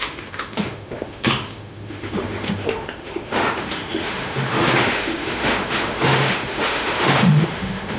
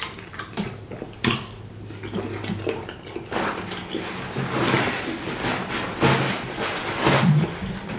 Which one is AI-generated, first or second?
first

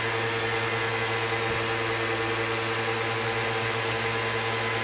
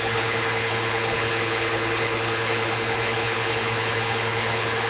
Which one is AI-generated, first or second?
second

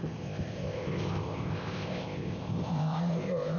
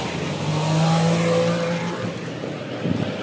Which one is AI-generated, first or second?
first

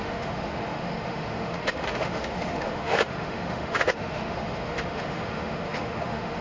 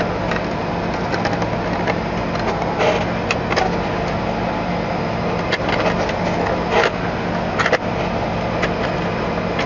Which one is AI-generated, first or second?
first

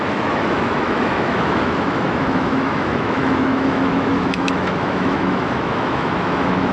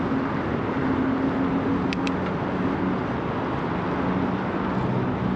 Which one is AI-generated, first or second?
first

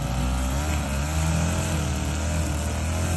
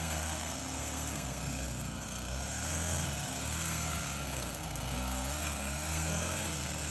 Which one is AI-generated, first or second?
second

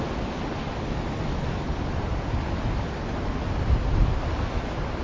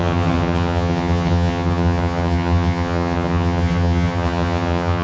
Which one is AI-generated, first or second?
second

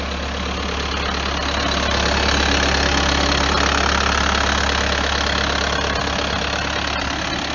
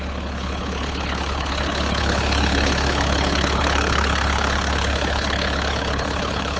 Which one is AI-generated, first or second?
second